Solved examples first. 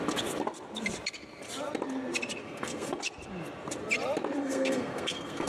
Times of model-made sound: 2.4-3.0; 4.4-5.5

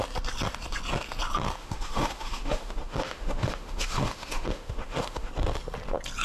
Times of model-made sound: 1.6-5.3